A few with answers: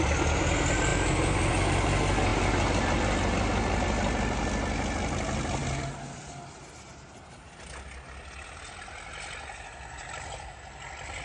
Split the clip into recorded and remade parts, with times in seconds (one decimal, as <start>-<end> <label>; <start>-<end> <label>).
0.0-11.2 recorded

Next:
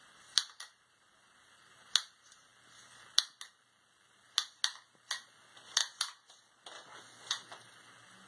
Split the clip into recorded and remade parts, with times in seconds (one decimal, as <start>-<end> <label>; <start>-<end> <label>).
0.0-8.3 recorded

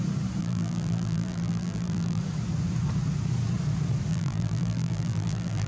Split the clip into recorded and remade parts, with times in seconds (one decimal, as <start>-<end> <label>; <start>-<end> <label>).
0.0-0.4 recorded; 0.4-2.2 remade; 2.2-4.1 recorded; 4.1-5.7 remade